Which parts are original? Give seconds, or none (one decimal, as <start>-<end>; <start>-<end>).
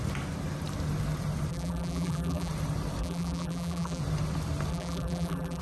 0.0-1.5; 2.5-3.0; 4.0-4.7